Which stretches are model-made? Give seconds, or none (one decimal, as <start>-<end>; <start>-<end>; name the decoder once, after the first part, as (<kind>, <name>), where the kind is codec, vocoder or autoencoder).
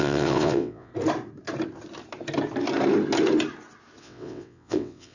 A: 0.0-0.9 (vocoder, WaveNeXt); 4.0-5.1